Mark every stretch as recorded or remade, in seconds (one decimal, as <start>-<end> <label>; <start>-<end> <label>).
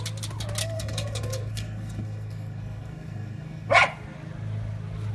0.0-0.6 recorded; 0.6-3.7 remade; 3.7-5.1 recorded